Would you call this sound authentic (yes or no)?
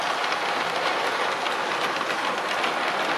yes